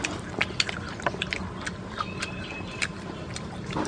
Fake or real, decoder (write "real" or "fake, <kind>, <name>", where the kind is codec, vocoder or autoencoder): real